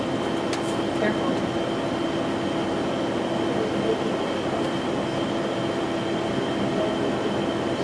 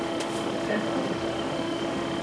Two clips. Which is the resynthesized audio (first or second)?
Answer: second